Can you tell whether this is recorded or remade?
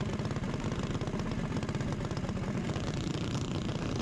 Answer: recorded